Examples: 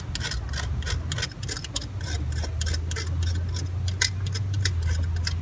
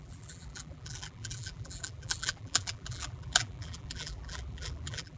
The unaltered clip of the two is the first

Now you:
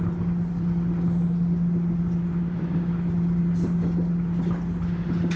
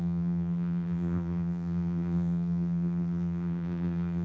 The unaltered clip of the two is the first